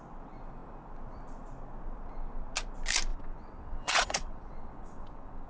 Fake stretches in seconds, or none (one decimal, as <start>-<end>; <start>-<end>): 3.1-5.5